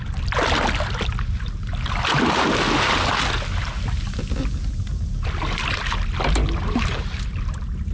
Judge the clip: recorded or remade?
recorded